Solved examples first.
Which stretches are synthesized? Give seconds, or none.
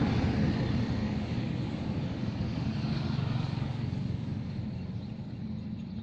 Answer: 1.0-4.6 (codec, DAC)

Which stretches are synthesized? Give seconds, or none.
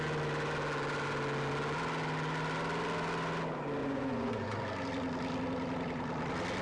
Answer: 3.8-4.6 (vocoder, Vocos)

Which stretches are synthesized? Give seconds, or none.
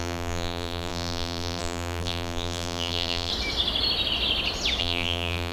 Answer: 0.0-3.3 (vocoder, BigVGAN v2); 4.8-5.5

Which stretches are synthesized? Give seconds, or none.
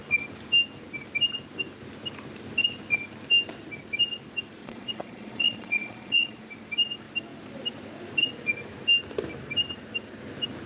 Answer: 4.6-6.4 (vocoder, Vocos)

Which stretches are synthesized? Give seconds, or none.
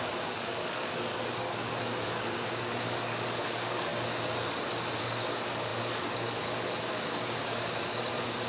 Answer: 0.0-3.9 (codec, DAC); 5.0-8.5